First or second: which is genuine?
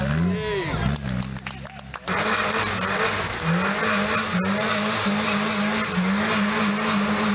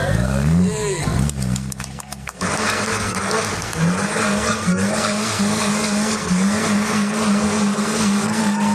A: first